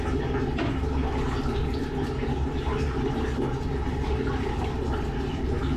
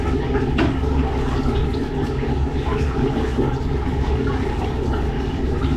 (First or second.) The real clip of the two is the first